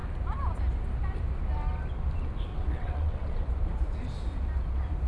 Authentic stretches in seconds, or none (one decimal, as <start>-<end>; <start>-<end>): 0.0-2.5; 3.5-5.1